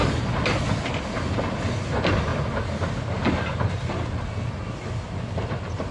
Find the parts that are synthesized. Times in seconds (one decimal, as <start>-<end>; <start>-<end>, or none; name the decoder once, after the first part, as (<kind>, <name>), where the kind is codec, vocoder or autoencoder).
none